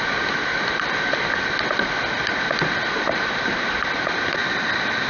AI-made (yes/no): no